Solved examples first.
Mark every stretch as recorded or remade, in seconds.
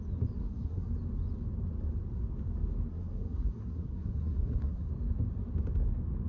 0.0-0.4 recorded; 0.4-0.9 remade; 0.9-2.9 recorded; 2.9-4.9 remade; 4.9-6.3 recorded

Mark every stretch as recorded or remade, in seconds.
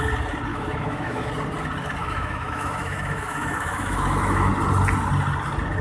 0.0-0.5 recorded; 0.5-1.3 remade; 1.3-2.0 recorded; 2.0-4.5 remade; 4.5-5.8 recorded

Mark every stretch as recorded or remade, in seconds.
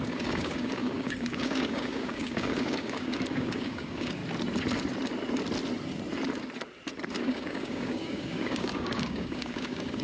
0.0-4.2 remade; 4.2-7.2 recorded; 7.2-10.0 remade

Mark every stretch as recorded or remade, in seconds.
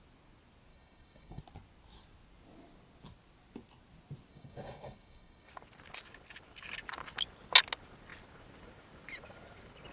0.0-0.7 recorded; 0.7-1.4 remade; 1.4-4.3 recorded; 4.3-5.5 remade; 5.5-9.9 recorded